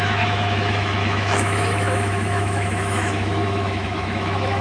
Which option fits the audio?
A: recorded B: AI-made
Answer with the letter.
B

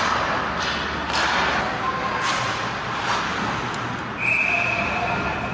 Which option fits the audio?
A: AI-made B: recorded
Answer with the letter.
B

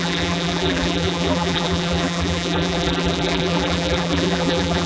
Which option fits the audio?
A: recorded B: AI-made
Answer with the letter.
B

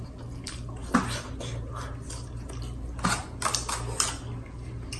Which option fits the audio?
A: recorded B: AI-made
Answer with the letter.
A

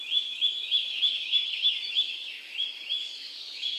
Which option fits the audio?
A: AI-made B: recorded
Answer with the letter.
A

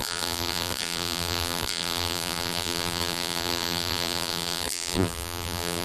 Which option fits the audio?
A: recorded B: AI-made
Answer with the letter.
B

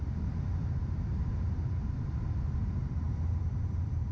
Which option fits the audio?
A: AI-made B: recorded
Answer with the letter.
A